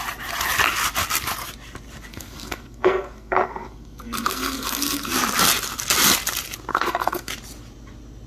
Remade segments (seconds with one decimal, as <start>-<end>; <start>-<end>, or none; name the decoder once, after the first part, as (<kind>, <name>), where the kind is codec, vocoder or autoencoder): 2.1-5.1 (codec, SNAC); 6.7-7.3